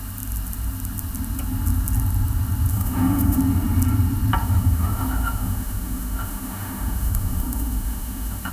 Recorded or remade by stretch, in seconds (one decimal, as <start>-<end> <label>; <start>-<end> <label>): 0.0-2.7 recorded; 2.7-3.4 remade; 3.4-4.4 recorded; 4.4-8.5 remade